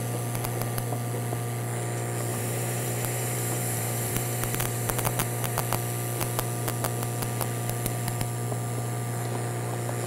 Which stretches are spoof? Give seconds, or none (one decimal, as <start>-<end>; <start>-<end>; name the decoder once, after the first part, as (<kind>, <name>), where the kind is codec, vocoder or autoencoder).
2.3-5.6 (vocoder, BigVGAN v2)